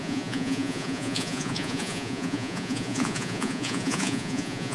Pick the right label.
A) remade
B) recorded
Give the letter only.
A